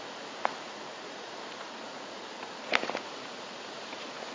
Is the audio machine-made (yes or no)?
yes